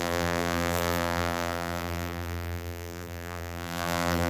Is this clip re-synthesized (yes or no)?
yes